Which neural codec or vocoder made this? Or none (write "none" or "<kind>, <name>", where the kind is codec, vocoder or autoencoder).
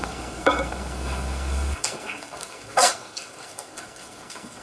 codec, SNAC